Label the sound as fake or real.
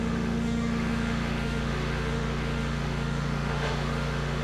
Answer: fake